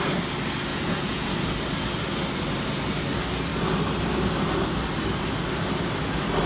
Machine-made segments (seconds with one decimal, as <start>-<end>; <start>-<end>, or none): 0.7-1.3